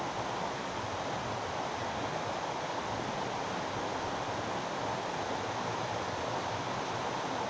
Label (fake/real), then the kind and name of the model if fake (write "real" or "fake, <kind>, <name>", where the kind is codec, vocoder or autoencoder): real